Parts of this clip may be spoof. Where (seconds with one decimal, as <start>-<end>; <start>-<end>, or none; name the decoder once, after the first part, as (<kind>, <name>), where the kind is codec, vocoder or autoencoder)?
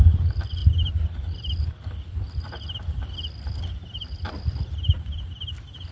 none